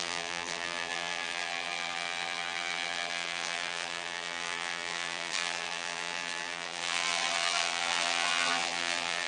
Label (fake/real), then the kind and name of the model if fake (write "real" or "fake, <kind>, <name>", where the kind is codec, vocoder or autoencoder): fake, vocoder, BigVGAN v2